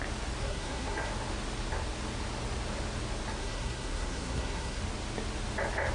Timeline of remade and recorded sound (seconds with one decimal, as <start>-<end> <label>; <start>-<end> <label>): 0.0-0.4 recorded; 0.4-1.1 remade; 1.1-3.4 recorded; 3.4-4.8 remade; 4.8-5.9 recorded